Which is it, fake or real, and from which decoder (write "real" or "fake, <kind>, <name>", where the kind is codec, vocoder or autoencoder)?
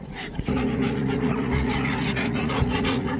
fake, vocoder, Vocos